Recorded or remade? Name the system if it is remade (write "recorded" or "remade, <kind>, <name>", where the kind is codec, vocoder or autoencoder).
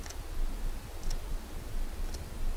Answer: recorded